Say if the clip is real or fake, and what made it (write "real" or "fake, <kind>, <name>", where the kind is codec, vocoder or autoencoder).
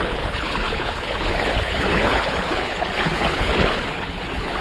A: fake, codec, HILCodec